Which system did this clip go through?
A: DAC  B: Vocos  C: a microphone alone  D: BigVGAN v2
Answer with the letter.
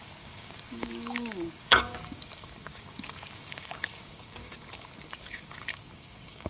A